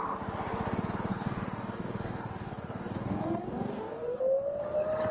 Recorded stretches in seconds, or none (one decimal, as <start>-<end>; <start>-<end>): 0.0-1.1; 4.2-5.1

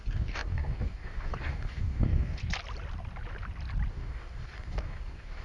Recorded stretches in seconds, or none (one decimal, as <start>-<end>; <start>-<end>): 2.4-3.9

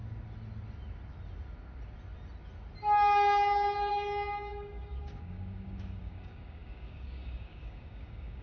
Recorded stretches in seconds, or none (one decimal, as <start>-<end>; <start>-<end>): 0.0-3.9